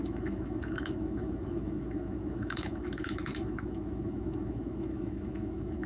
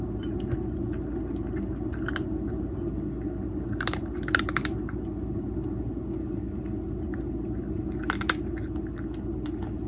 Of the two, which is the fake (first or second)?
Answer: first